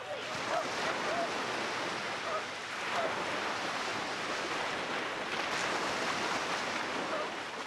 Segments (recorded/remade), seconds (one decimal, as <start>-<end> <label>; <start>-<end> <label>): 0.0-7.7 recorded